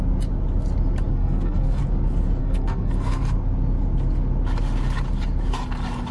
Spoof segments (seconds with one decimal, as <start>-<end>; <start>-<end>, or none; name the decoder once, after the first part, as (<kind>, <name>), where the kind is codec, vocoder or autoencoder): 1.1-1.8 (codec, SNAC); 2.4-3.2

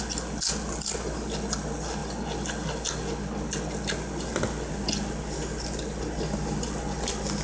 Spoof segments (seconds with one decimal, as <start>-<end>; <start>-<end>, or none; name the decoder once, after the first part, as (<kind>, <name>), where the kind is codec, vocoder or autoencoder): none

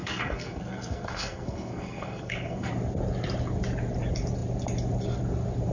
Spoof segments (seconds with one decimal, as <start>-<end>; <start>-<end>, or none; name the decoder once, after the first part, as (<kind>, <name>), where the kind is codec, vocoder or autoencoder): 0.0-2.7 (codec, SNAC)

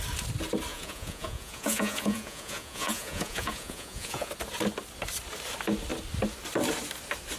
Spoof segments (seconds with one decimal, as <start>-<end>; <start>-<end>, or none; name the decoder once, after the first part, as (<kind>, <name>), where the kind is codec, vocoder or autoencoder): 0.7-4.3 (vocoder, Vocos)

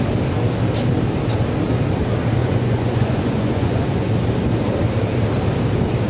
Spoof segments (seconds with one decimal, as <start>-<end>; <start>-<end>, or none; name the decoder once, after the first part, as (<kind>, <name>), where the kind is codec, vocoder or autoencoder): 2.4-4.1 (vocoder, Vocos)

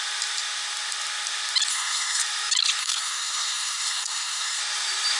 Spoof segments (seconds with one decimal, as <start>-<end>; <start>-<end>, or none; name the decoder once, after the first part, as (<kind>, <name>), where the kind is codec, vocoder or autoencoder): 1.7-2.2 (codec, SNAC); 2.8-4.6

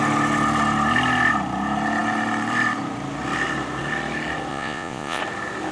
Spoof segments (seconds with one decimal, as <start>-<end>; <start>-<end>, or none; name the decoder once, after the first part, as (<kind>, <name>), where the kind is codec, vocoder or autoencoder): 4.5-5.2 (vocoder, Vocos)

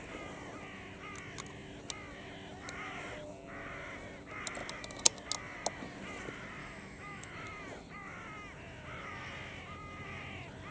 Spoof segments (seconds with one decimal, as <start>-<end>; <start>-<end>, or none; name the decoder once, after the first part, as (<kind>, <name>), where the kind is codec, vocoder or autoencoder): 6.6-7.3 (autoencoder, DAC-VAE)